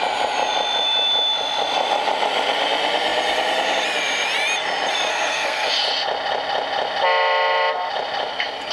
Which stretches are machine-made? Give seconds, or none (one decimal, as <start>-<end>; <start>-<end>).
5.1-5.7